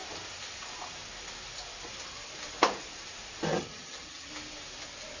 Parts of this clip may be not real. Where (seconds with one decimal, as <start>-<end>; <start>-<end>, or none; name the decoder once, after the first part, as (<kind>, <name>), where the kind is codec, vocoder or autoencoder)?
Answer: 3.5-4.3 (vocoder, HiFi-GAN)